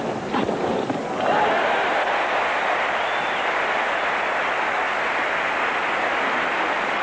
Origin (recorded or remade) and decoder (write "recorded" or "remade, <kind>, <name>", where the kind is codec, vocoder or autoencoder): recorded